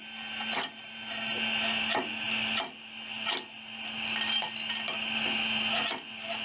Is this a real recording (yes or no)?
yes